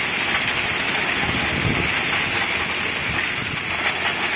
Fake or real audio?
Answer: real